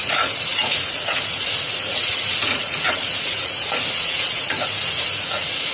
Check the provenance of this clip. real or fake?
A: fake